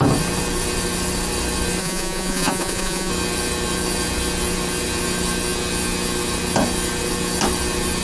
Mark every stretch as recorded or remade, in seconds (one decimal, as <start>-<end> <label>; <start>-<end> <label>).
0.0-1.8 recorded; 1.8-3.1 remade; 3.1-8.0 recorded